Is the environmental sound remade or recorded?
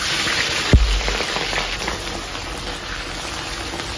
recorded